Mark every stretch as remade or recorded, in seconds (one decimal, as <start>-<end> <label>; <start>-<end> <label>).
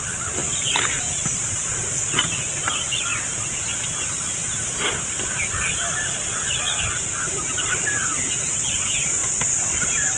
0.0-10.2 recorded